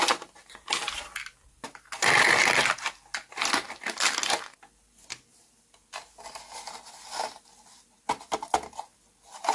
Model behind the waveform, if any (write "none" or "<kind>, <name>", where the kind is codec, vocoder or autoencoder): none